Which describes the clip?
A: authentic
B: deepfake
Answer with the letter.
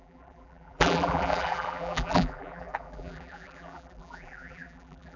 B